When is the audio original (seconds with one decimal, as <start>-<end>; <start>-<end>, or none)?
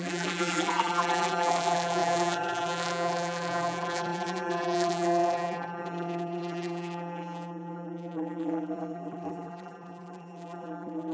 none